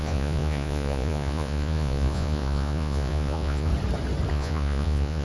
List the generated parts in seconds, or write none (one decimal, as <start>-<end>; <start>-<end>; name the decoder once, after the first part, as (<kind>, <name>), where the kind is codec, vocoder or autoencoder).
0.0-3.7 (vocoder, Vocos); 4.3-5.2